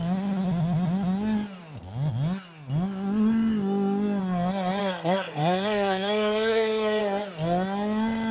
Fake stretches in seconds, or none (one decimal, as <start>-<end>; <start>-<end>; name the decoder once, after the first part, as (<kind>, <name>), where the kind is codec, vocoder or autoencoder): 4.8-7.0 (codec, SNAC)

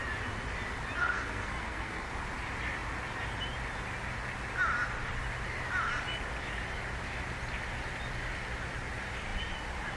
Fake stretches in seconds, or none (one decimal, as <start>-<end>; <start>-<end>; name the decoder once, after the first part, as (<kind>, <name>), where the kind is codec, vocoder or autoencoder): 1.0-2.1 (codec, SNAC)